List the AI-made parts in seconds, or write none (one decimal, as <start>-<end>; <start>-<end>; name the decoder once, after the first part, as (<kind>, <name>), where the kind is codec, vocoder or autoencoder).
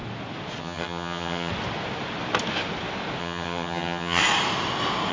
0.6-1.5 (vocoder, HiFi-GAN); 3.2-4.2